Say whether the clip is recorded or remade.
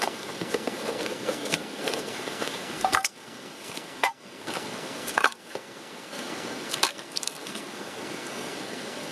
remade